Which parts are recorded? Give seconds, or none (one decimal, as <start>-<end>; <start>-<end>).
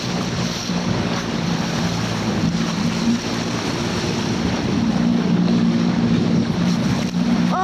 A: 0.0-0.6; 1.3-5.1; 6.5-7.6